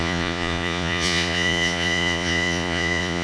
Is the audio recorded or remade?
remade